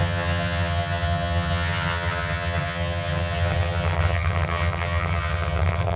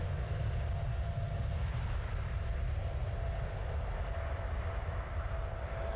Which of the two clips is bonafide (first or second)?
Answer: second